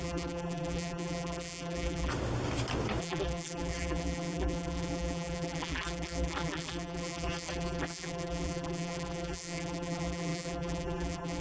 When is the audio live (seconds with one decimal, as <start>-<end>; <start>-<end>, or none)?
2.1-3.0